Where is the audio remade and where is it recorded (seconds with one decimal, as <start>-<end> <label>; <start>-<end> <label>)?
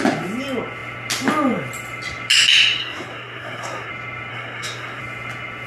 0.0-2.8 recorded; 2.8-3.9 remade; 3.9-4.3 recorded; 4.3-5.0 remade; 5.0-5.7 recorded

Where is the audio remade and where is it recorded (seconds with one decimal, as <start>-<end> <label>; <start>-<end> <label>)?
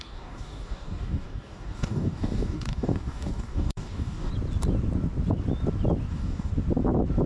0.0-4.3 remade; 4.3-6.1 recorded; 6.1-6.5 remade; 6.5-7.3 recorded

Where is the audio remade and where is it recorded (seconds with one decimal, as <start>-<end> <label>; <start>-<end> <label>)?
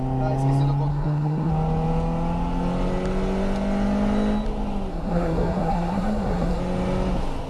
0.0-0.9 recorded; 0.9-1.5 remade; 1.5-4.9 recorded; 4.9-6.6 remade; 6.6-7.5 recorded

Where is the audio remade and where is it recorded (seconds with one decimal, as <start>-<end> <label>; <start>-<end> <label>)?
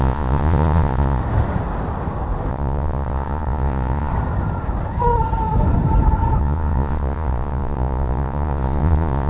0.0-1.2 remade; 1.2-2.5 recorded; 2.5-4.1 remade; 4.1-6.4 recorded; 6.4-9.3 remade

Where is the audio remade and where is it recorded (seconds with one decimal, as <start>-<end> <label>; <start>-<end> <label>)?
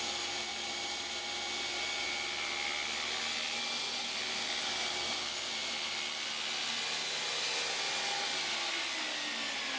0.0-9.8 recorded